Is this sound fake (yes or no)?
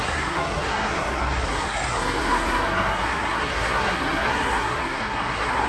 yes